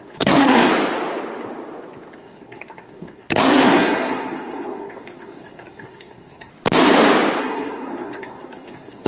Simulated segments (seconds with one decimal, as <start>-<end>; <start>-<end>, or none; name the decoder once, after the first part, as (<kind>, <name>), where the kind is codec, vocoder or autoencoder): 0.0-0.7 (codec, SNAC); 2.2-6.5; 7.4-9.1